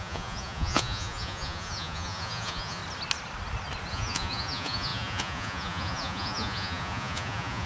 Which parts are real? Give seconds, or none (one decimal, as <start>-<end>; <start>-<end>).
2.8-3.9